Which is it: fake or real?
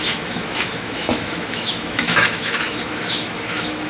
fake